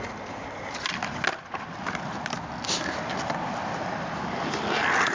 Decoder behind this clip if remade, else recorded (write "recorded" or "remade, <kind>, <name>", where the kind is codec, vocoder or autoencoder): recorded